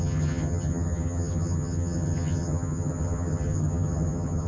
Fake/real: fake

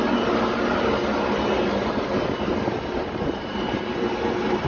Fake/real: real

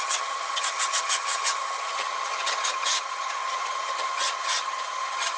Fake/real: fake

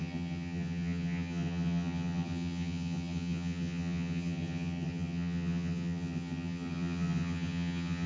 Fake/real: fake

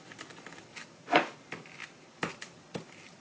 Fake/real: real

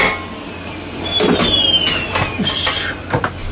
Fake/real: real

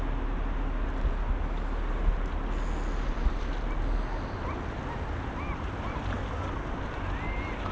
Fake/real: real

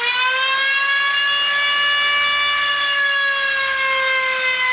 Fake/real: real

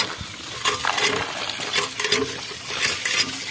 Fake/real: real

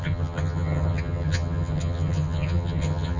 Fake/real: fake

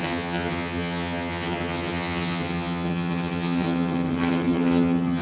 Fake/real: fake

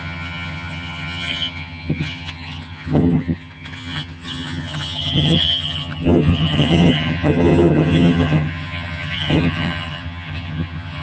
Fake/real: fake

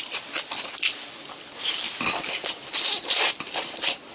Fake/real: real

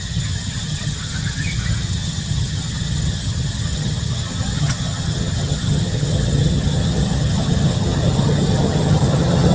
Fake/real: fake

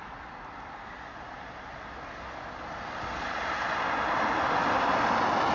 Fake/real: real